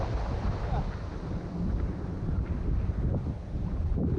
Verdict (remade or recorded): recorded